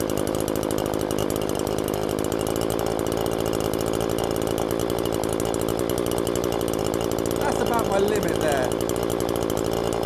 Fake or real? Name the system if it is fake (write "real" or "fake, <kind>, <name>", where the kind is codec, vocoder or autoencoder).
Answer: real